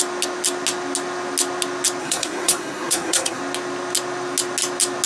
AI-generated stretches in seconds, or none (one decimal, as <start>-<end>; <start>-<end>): 2.0-3.4